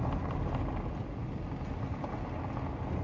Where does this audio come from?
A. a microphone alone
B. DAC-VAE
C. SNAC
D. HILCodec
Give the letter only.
A